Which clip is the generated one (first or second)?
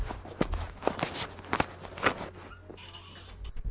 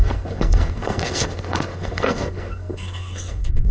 second